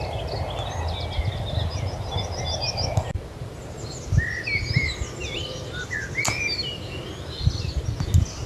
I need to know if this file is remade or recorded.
recorded